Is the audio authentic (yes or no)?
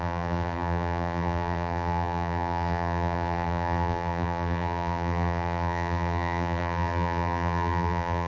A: no